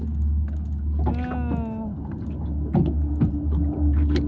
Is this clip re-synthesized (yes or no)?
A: no